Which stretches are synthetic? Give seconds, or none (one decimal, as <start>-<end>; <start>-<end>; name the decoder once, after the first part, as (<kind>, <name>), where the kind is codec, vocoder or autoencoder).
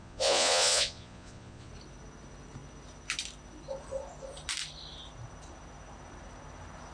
0.0-1.7 (vocoder, Vocos)